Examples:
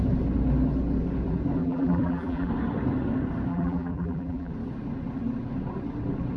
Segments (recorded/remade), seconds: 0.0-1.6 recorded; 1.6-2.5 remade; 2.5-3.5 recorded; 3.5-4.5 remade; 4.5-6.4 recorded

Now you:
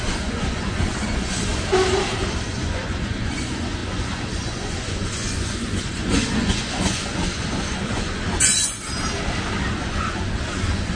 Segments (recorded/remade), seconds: 0.0-1.4 remade; 1.4-2.5 recorded; 2.5-8.8 remade; 8.8-9.7 recorded; 9.7-11.0 remade

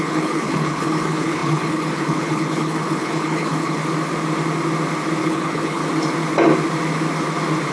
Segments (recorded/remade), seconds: 0.0-3.8 remade; 3.8-5.2 recorded; 5.2-5.8 remade; 5.8-7.7 recorded

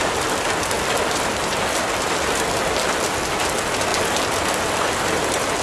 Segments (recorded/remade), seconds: 0.0-5.6 recorded